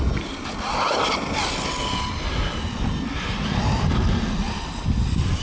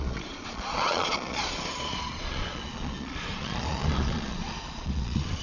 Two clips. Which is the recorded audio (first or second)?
first